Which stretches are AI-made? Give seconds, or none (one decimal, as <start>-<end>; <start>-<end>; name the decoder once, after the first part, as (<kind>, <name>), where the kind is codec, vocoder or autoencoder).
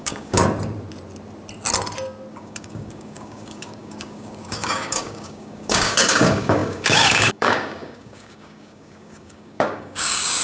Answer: 0.0-0.4 (codec, DAC); 2.3-10.4